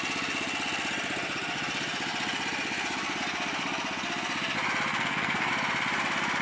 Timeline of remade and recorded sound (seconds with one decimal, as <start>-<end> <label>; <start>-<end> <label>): 0.0-4.9 recorded; 4.9-5.5 remade; 5.5-6.4 recorded